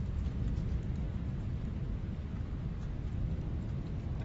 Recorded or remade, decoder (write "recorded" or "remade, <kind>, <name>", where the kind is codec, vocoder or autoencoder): recorded